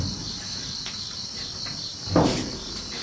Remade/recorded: recorded